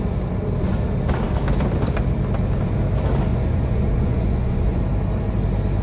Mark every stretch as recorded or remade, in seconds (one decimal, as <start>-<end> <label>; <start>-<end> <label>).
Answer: 0.0-3.3 recorded; 3.3-4.8 remade; 4.8-5.8 recorded